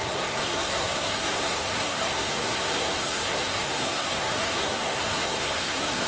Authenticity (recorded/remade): remade